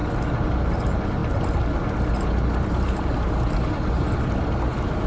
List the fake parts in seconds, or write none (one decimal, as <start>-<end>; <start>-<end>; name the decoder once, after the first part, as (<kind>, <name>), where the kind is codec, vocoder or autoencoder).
none